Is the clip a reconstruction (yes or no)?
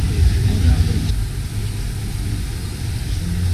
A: no